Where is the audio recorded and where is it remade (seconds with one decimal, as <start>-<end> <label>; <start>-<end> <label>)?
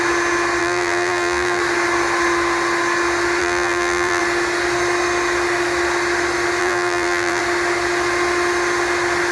0.0-0.6 recorded; 0.6-1.6 remade; 1.6-3.4 recorded; 3.4-4.2 remade; 4.2-6.6 recorded; 6.6-7.4 remade; 7.4-9.3 recorded